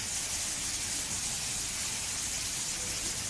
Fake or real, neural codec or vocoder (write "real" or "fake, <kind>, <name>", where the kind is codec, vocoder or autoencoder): real